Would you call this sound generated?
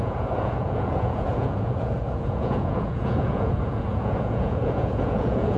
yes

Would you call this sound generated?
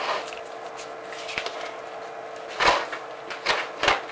no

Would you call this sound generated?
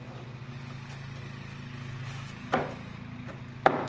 no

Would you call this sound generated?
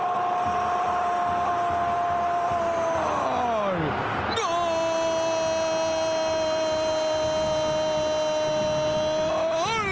no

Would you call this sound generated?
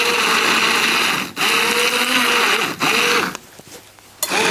no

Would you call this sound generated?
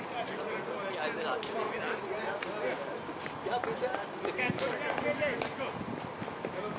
no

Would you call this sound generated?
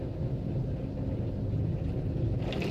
no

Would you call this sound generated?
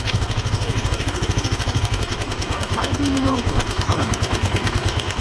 yes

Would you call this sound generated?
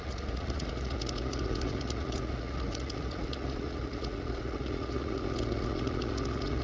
yes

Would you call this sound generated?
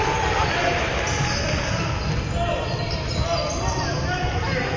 no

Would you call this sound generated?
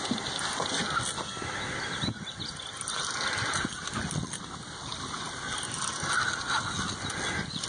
no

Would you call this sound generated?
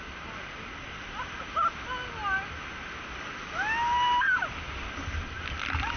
no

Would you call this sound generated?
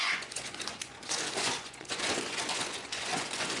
yes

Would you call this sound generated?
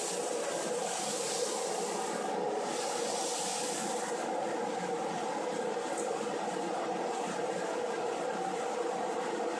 no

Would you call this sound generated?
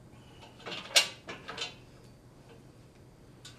no